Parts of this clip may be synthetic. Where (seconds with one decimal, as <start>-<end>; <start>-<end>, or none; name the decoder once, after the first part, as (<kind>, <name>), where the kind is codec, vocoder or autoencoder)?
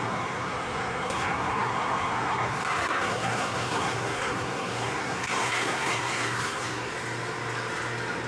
0.0-6.9 (codec, SNAC)